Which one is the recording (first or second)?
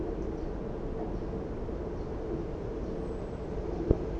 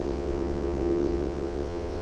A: first